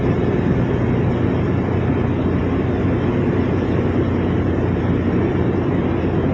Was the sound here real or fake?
real